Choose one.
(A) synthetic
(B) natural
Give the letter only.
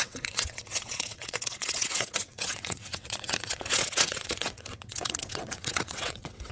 A